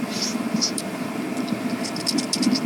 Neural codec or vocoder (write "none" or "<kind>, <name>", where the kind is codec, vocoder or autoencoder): none